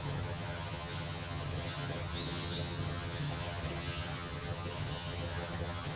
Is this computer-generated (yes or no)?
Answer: yes